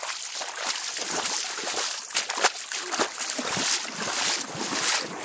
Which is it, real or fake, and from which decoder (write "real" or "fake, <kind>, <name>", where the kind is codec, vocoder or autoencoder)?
real